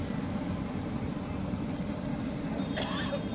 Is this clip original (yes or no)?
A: yes